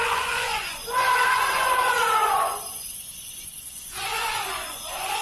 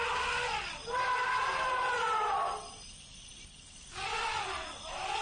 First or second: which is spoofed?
first